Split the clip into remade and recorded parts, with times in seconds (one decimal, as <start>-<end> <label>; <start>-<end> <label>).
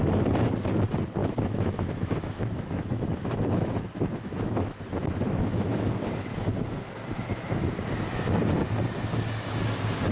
0.0-1.2 recorded; 1.2-5.9 remade; 5.9-10.1 recorded